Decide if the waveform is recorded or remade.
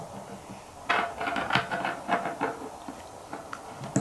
recorded